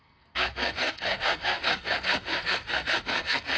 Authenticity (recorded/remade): remade